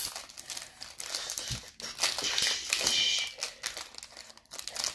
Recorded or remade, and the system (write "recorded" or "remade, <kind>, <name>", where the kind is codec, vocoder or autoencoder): recorded